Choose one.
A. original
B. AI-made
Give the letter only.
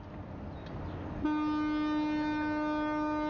A